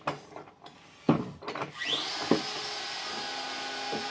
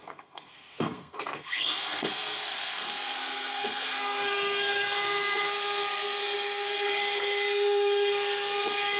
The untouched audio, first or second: first